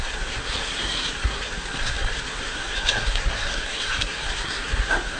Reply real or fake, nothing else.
fake